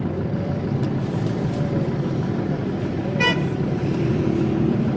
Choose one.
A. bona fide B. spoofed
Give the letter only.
B